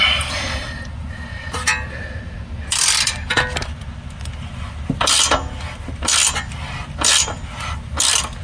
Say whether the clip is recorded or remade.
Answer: recorded